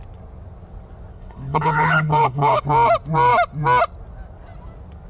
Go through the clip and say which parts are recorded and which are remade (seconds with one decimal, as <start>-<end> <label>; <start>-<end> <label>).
0.0-1.1 recorded; 1.1-2.6 remade; 2.6-5.1 recorded